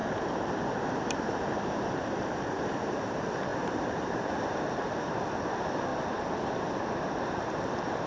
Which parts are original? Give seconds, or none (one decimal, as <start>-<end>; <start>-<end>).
5.9-7.4